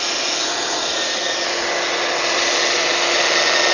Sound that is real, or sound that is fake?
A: real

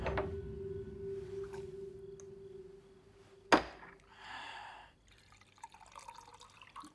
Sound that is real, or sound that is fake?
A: real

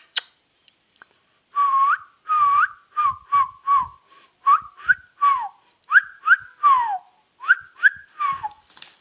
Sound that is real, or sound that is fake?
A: fake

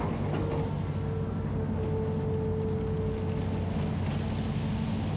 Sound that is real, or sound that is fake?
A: real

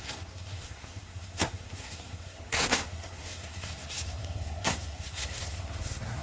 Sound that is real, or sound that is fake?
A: fake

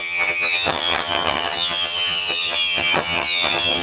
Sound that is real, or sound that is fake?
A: fake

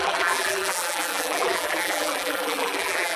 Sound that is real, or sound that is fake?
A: fake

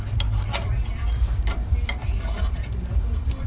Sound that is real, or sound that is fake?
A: real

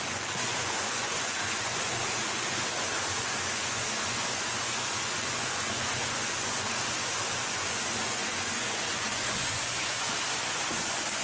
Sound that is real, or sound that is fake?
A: fake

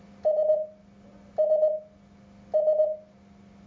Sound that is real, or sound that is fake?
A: real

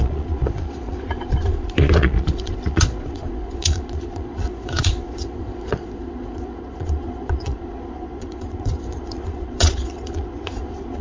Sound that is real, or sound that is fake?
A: fake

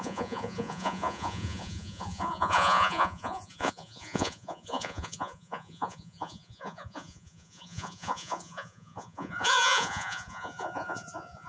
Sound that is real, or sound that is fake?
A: fake